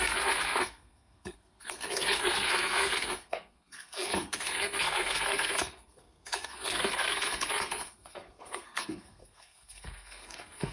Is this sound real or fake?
fake